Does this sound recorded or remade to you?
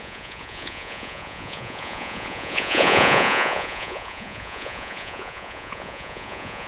remade